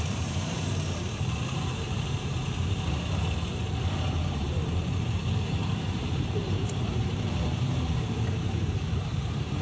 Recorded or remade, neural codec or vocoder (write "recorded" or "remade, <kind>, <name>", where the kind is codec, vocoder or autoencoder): remade, vocoder, BigVGAN v2